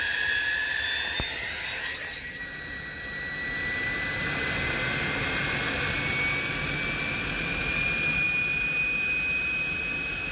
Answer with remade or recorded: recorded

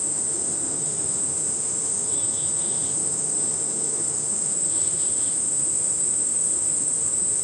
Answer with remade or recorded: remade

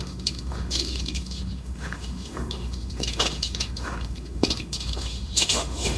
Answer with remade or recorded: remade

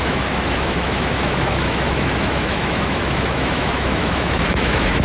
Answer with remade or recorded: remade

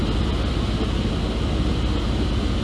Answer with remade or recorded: recorded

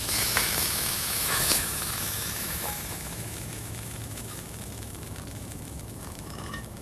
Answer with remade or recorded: remade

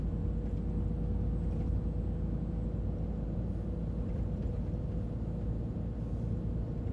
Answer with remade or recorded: recorded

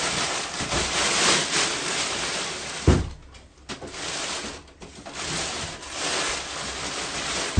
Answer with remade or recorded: recorded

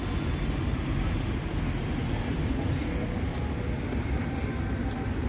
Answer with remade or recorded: recorded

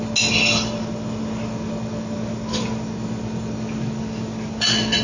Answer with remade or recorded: recorded